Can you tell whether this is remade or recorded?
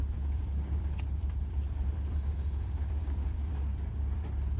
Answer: remade